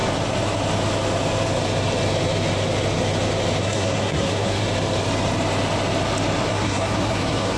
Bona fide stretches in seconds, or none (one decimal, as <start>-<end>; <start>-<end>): 0.0-3.6; 4.6-6.5